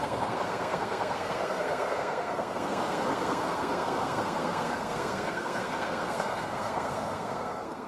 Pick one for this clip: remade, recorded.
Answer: remade